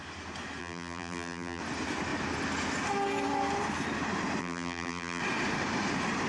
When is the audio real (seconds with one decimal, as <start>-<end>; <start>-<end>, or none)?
0.0-0.6; 1.6-4.4; 5.2-6.3